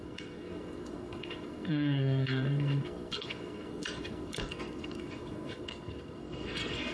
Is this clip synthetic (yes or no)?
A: yes